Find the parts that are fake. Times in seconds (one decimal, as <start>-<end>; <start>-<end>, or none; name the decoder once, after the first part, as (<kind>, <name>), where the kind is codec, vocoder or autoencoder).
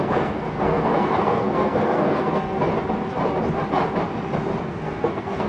0.0-2.7 (codec, SNAC); 4.6-5.5